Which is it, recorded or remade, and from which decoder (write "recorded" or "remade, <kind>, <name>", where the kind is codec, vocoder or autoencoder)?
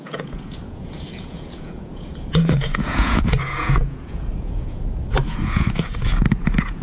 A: remade, vocoder, Vocos